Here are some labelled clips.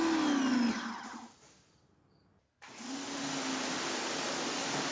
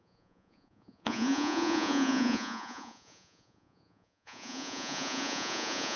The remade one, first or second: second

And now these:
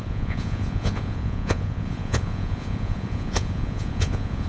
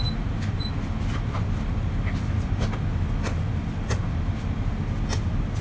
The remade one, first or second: first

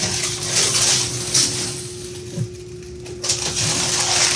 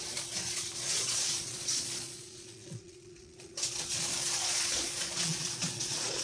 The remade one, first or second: second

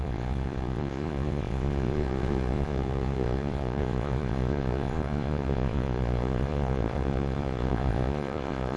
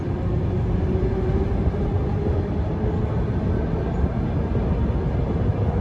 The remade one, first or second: first